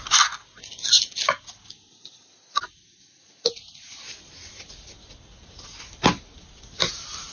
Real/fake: real